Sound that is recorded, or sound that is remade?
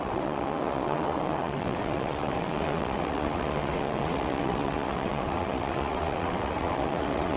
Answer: remade